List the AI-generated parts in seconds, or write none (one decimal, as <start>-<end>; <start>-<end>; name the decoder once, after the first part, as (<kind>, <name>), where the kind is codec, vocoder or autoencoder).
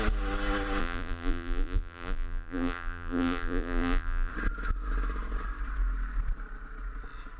0.8-4.3 (vocoder, BigVGAN v2)